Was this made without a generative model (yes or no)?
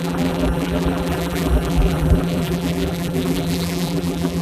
no